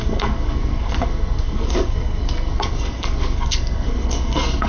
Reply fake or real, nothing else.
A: fake